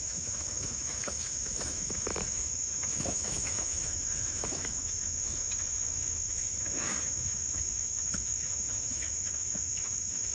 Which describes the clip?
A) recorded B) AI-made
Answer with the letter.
B